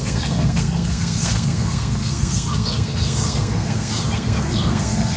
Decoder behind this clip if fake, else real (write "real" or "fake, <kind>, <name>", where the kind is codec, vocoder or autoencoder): fake, codec, SNAC